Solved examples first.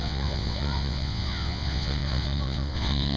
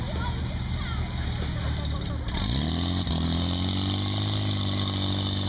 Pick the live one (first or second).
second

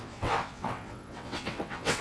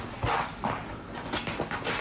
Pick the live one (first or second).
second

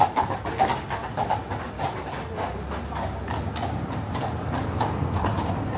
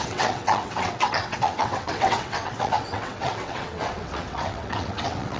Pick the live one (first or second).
first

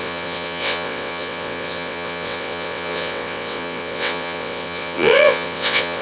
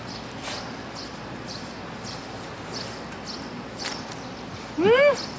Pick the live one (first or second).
second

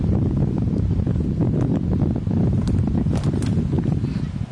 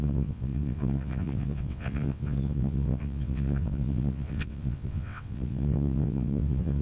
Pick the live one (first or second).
first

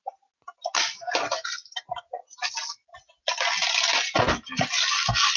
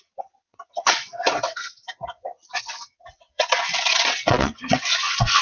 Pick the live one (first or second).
first